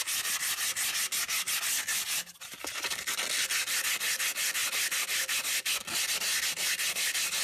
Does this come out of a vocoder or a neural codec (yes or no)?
no